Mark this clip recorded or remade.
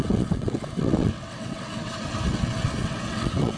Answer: remade